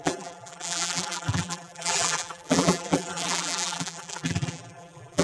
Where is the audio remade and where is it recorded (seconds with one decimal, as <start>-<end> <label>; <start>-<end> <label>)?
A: 0.0-5.2 remade